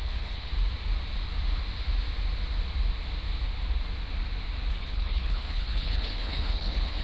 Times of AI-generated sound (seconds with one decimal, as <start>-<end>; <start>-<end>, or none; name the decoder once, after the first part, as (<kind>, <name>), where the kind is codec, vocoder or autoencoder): 0.0-0.5 (codec, HILCodec); 4.7-7.0